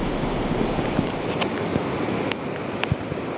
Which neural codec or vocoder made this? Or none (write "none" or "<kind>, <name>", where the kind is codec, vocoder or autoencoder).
vocoder, BigVGAN v2